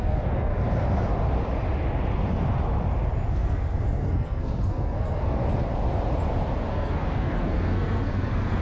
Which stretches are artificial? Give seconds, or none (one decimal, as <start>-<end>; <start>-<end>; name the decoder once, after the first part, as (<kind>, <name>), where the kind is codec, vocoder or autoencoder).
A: 0.0-0.5 (codec, SNAC); 3.3-5.4; 6.7-8.6